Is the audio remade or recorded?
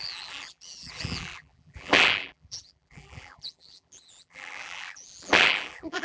remade